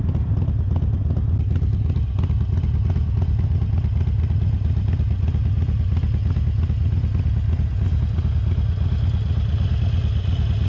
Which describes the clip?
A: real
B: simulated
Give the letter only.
A